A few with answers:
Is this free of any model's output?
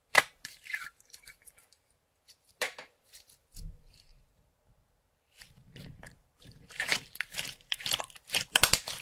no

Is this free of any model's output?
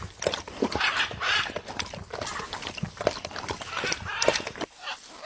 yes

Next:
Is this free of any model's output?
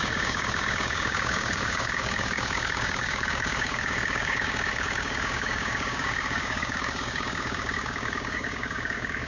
no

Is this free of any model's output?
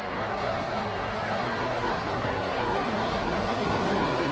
no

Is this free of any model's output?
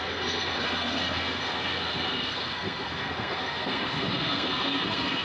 no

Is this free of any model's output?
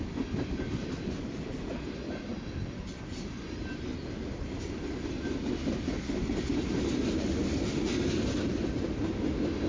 yes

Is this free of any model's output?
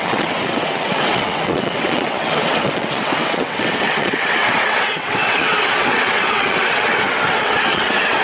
no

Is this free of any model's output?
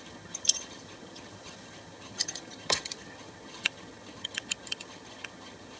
no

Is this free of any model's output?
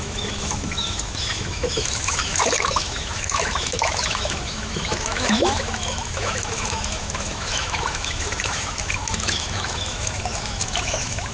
no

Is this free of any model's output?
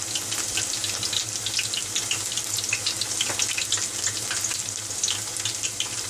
yes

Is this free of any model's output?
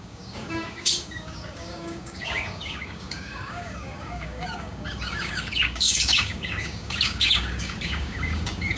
no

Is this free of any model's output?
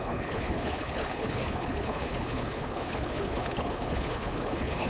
no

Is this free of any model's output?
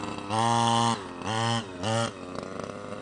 yes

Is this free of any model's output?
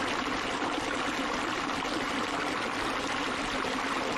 yes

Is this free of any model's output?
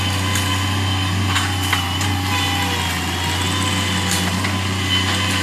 yes